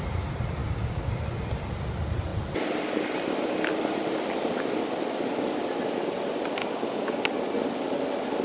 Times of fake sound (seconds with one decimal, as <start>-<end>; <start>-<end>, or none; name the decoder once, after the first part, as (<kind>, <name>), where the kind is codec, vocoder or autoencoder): 0.6-1.1 (codec, DAC); 6.6-7.2